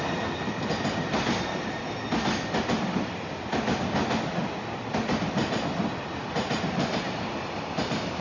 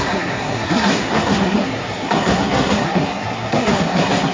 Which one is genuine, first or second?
first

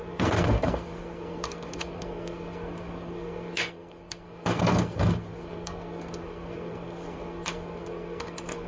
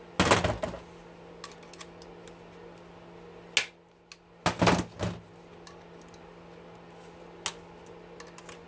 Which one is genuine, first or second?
second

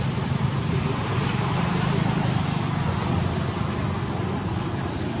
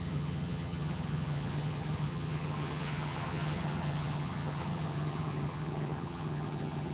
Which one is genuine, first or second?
first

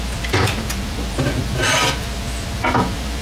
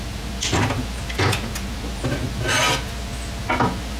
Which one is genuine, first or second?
second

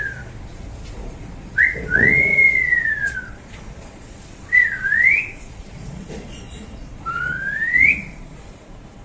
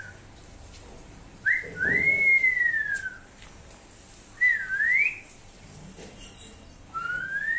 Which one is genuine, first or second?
second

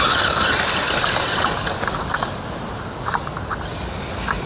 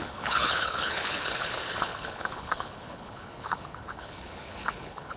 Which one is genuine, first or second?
first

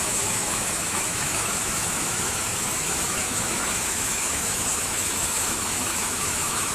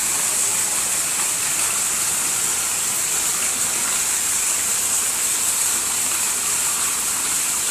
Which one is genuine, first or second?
second